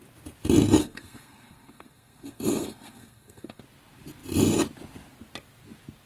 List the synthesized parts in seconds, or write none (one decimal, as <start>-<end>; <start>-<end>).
0.8-3.6